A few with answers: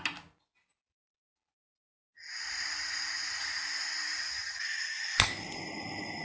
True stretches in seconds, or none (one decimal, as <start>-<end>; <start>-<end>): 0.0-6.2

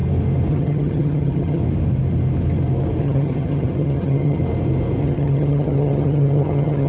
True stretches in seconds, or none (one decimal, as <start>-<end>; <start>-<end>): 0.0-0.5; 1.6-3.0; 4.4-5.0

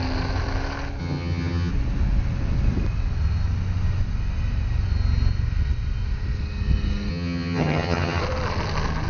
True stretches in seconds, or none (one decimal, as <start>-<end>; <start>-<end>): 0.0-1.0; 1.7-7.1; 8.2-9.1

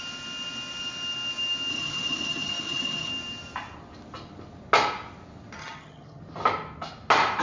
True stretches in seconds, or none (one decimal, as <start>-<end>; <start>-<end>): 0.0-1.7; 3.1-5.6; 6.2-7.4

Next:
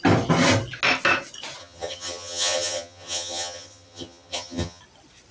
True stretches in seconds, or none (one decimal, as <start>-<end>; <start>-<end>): 0.0-1.6; 4.8-5.3